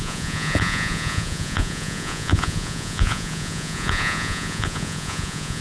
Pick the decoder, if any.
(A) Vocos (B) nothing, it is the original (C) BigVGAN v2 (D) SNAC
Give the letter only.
A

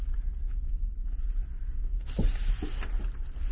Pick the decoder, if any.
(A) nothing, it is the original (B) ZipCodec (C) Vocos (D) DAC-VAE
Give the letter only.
A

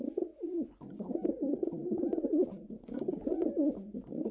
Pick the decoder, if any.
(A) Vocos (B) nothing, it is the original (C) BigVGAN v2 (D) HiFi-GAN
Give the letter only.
A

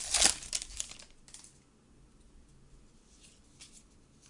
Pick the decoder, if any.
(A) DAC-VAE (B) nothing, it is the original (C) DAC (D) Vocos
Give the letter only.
B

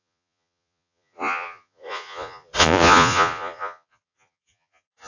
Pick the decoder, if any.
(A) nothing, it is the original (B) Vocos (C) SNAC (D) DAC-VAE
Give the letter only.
B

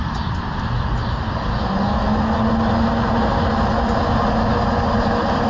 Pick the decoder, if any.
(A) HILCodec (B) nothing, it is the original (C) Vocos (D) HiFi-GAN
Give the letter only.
B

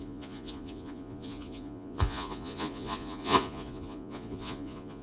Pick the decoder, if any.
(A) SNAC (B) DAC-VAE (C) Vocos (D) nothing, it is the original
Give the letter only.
C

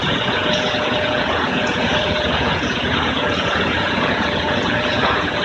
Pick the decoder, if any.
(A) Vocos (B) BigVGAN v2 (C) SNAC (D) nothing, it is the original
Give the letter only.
A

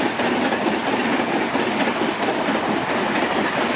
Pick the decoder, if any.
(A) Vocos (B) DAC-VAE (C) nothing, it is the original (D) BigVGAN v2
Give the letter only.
C